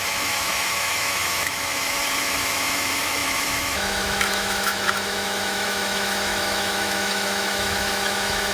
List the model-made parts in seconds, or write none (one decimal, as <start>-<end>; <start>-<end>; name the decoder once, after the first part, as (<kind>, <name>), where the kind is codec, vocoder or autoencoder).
0.0-8.5 (autoencoder, DAC-VAE)

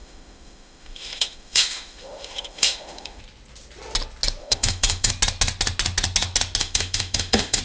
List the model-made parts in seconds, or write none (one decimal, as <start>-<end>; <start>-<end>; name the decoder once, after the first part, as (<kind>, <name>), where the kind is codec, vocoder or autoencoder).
0.0-3.2 (autoencoder, DAC-VAE); 4.4-5.1; 6.6-7.6

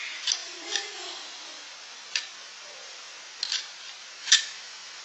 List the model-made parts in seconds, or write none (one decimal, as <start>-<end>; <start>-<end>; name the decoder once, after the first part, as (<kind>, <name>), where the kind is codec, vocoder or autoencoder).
4.2-5.0 (autoencoder, DAC-VAE)

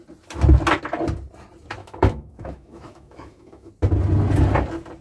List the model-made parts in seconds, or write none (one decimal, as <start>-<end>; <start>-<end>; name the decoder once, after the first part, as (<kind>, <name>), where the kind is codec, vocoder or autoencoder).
1.8-3.7 (autoencoder, DAC-VAE)

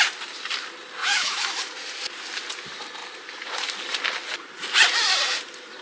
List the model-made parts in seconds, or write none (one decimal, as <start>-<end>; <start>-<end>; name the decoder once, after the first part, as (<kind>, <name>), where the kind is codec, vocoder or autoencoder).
1.0-1.6 (autoencoder, DAC-VAE)

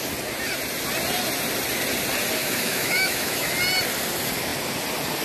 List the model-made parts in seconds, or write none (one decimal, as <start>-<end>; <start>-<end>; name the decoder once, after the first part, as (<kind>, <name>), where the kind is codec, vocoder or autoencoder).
2.4-3.5 (autoencoder, DAC-VAE)

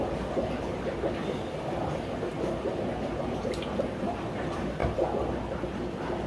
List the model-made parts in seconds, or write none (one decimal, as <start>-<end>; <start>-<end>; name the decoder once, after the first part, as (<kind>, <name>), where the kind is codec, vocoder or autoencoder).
none

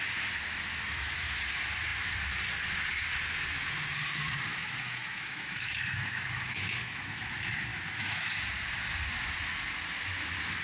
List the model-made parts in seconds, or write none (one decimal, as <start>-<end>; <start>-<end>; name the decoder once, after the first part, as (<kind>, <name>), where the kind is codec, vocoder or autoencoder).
0.7-1.4 (autoencoder, DAC-VAE); 4.5-7.3; 7.7-8.4